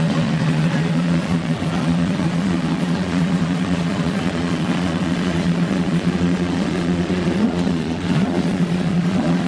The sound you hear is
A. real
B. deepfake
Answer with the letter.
B